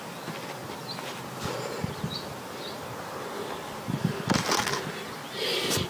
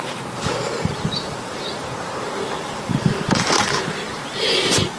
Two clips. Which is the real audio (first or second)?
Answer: first